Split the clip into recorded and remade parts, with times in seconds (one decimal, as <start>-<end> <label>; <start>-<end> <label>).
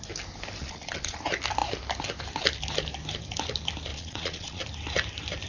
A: 0.0-0.6 recorded; 0.6-1.2 remade; 1.2-3.9 recorded; 3.9-4.6 remade; 4.6-5.5 recorded